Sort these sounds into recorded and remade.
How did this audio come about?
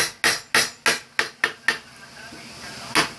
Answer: recorded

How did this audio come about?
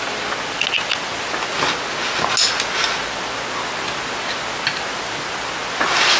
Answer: recorded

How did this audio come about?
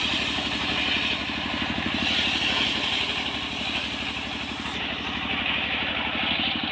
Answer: recorded